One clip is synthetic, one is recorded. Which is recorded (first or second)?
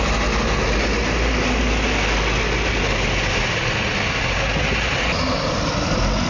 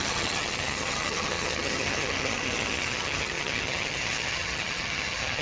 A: first